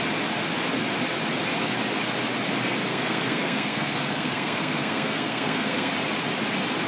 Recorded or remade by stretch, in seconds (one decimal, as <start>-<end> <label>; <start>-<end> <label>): 0.0-2.9 recorded; 2.9-5.9 remade; 5.9-6.9 recorded